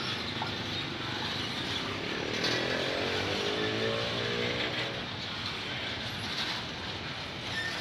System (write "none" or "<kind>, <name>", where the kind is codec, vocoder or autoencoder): none